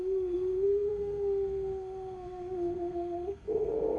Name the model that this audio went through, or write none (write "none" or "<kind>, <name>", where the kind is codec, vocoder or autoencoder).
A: codec, SNAC